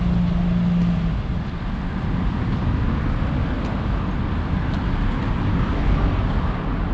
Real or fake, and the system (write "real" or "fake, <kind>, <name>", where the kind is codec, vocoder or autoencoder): real